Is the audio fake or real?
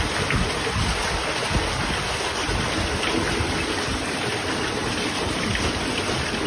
real